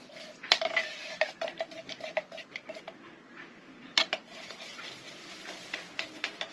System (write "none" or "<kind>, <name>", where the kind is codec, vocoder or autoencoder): none